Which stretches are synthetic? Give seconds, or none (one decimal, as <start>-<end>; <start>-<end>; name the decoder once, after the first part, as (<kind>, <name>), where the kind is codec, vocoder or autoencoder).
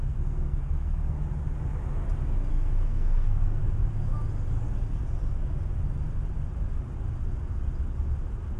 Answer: 0.0-1.2 (codec, SNAC); 2.5-3.6